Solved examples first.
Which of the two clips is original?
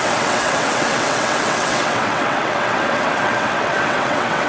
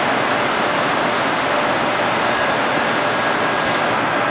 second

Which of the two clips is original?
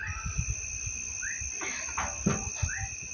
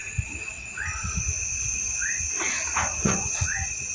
first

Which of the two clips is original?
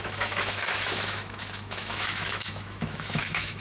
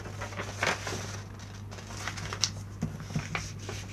second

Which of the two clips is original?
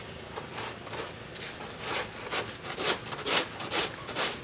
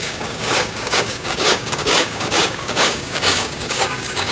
first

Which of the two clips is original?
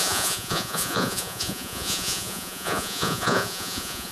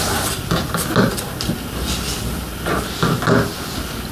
second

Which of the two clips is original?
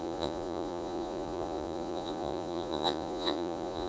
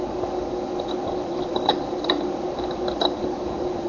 second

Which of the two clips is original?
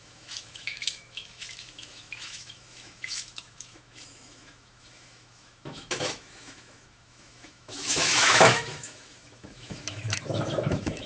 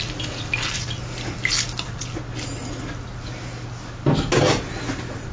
second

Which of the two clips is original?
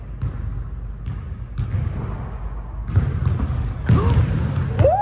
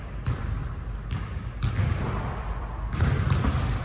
first